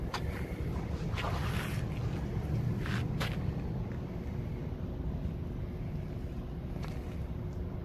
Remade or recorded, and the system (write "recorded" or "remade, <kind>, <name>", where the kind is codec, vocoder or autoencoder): recorded